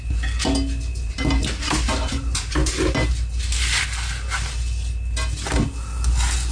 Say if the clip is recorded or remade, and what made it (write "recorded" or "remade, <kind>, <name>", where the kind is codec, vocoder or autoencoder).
recorded